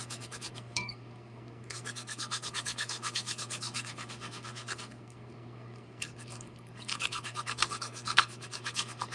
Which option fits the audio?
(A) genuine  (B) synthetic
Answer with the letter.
B